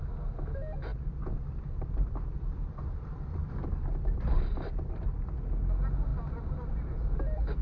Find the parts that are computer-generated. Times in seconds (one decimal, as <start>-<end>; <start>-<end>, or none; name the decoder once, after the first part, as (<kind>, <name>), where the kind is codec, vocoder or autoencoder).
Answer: 0.9-5.1 (vocoder, BigVGAN v2); 6.1-7.6